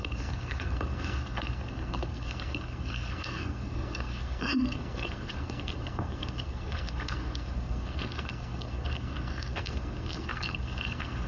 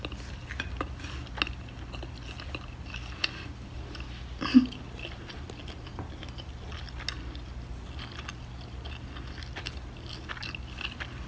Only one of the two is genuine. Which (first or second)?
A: second